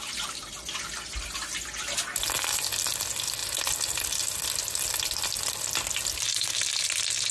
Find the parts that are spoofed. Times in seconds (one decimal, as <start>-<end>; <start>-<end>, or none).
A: none